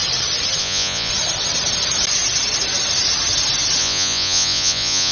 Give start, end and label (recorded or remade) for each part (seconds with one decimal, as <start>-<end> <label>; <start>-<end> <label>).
0.0-0.6 recorded; 0.6-1.1 remade; 1.1-3.8 recorded; 3.8-5.1 remade

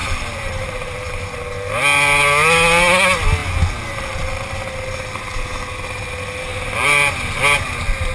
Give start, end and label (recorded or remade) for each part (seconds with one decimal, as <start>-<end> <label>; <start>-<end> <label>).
0.0-1.4 remade; 1.4-6.5 recorded; 6.5-7.4 remade; 7.4-8.1 recorded

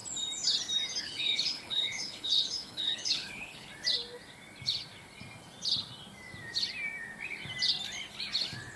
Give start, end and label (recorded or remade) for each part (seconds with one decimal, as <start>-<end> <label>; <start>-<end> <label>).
0.0-1.0 recorded; 1.0-3.7 remade; 3.7-8.8 recorded